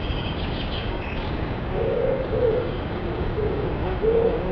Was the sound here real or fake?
fake